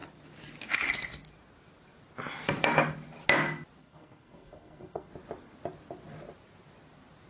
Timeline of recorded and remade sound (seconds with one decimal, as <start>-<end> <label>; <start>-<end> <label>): 0.0-3.8 recorded; 3.8-5.1 remade; 5.1-7.3 recorded